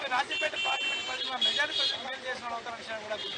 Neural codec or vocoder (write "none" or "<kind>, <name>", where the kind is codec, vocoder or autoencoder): none